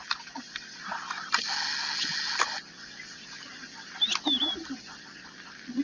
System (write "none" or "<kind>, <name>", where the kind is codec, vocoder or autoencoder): none